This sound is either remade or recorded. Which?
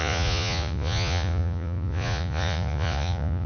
remade